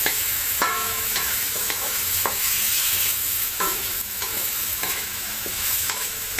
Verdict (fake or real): fake